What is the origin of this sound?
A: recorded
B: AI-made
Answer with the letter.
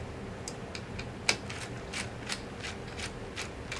A